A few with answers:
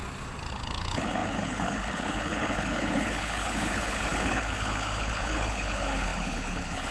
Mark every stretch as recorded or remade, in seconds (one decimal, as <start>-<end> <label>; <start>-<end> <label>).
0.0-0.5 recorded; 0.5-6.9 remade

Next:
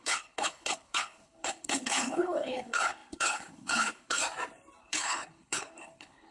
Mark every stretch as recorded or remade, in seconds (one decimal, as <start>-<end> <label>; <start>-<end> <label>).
0.0-4.2 remade; 4.2-4.8 recorded; 4.8-6.3 remade

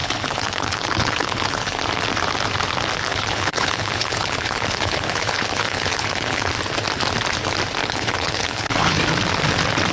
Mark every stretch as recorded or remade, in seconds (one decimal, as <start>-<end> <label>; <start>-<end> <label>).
0.0-1.8 remade; 1.8-3.1 recorded; 3.1-6.5 remade; 6.5-7.8 recorded; 7.8-9.0 remade; 9.0-9.9 recorded

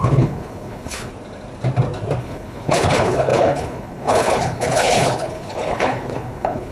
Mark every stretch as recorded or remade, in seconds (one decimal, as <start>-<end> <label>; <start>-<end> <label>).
0.0-1.1 remade; 1.1-2.2 recorded; 2.2-6.7 remade

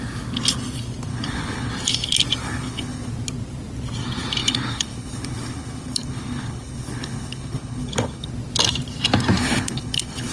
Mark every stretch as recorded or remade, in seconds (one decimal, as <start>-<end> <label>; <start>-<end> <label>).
0.0-1.1 recorded; 1.1-1.7 remade; 1.7-2.4 recorded; 2.4-3.1 remade; 3.1-4.4 recorded; 4.4-8.3 remade; 8.3-9.4 recorded; 9.4-10.3 remade

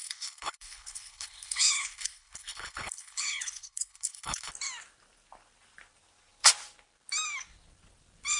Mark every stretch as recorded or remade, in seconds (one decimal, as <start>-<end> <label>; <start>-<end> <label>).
0.0-4.5 remade; 4.5-8.4 recorded

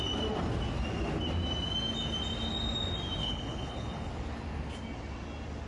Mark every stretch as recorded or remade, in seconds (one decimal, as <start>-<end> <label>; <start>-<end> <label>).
0.0-3.2 recorded; 3.2-4.1 remade; 4.1-5.7 recorded